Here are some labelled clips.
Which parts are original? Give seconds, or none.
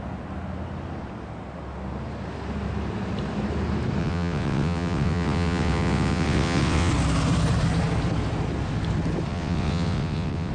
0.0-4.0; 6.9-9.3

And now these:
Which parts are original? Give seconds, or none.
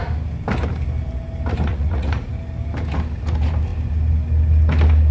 0.0-1.7; 2.3-5.1